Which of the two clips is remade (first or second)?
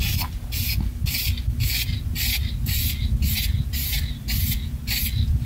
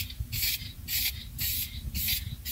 second